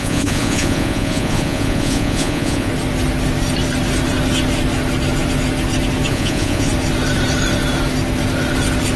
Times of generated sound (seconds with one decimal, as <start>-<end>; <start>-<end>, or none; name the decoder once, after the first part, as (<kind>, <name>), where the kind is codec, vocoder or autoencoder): 0.0-2.7 (vocoder, Vocos); 6.1-6.7